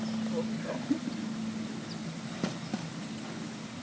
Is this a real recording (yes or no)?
yes